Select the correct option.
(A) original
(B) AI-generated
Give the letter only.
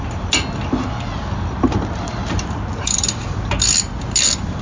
A